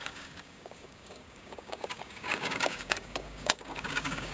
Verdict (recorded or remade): remade